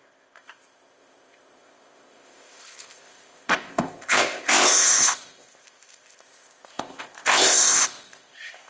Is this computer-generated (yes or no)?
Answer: yes